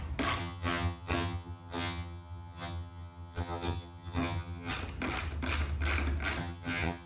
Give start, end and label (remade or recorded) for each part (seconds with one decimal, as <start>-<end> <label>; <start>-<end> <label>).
0.0-0.4 recorded; 0.4-4.7 remade; 4.7-6.4 recorded; 6.4-7.1 remade